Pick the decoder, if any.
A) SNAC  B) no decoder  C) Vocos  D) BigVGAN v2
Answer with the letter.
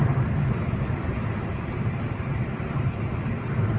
B